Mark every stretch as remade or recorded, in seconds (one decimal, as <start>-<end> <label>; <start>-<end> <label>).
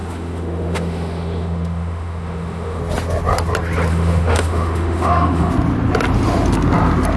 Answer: 0.0-2.8 remade; 2.8-3.9 recorded; 3.9-5.5 remade; 5.5-7.2 recorded